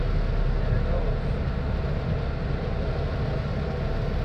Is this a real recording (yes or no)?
yes